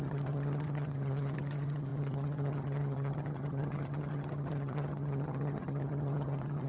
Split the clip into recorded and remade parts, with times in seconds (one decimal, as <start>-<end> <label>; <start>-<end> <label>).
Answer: 0.0-6.7 remade